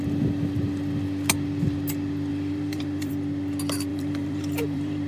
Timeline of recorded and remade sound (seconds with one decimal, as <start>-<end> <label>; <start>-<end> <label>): 0.0-2.3 recorded; 2.3-3.1 remade; 3.1-3.9 recorded; 3.9-5.1 remade